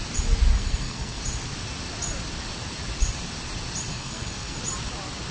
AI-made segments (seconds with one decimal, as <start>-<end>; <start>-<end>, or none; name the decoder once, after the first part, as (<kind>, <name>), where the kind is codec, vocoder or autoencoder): 0.5-1.2 (codec, SNAC); 3.9-4.6